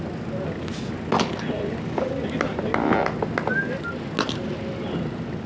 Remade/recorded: recorded